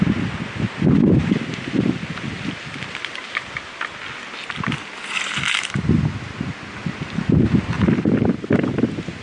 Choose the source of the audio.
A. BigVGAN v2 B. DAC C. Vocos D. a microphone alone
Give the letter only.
D